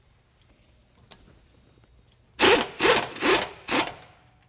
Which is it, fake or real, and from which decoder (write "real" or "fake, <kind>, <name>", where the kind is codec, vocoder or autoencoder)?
real